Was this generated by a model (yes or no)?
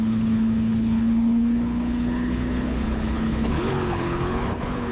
yes